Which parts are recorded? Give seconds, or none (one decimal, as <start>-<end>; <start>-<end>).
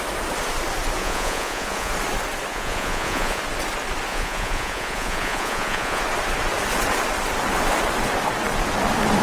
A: 0.0-1.0; 1.9-2.5; 3.4-4.1; 6.0-9.2